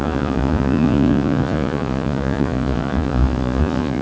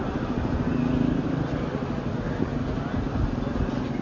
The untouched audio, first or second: second